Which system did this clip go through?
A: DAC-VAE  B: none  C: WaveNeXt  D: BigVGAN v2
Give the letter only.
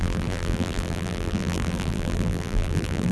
D